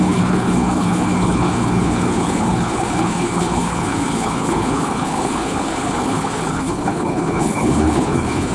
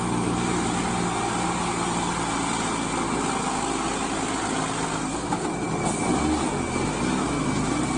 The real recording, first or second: second